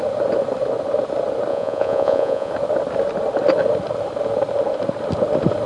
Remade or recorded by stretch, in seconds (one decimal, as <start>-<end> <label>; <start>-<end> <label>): 0.0-1.5 recorded; 1.5-2.5 remade; 2.5-5.7 recorded